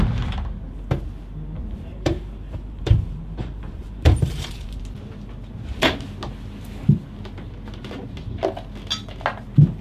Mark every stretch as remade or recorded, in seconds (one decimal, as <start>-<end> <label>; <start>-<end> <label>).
0.0-1.9 recorded; 1.9-4.8 remade; 4.8-9.8 recorded